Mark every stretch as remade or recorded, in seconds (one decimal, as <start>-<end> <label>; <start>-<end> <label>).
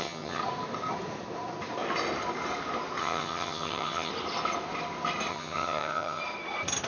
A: 0.0-0.4 remade; 0.4-3.0 recorded; 3.0-4.1 remade; 4.1-5.3 recorded; 5.3-6.2 remade; 6.2-6.9 recorded